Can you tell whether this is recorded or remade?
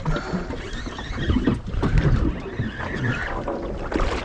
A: recorded